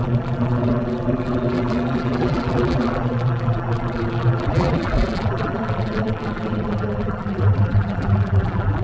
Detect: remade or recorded remade